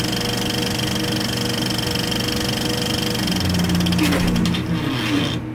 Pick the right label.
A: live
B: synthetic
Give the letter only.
A